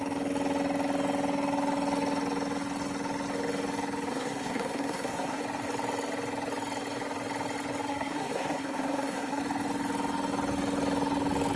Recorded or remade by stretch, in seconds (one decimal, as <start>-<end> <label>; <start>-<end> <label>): 0.0-4.1 recorded; 4.1-5.4 remade; 5.4-7.9 recorded; 7.9-9.4 remade; 9.4-11.6 recorded